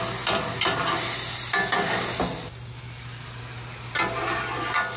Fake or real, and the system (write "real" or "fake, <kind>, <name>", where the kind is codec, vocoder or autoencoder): real